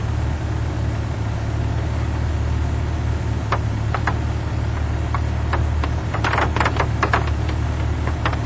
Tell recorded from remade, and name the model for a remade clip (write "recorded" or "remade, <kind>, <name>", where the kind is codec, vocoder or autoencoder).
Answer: recorded